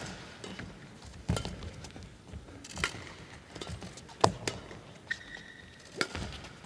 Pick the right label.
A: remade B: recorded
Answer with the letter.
B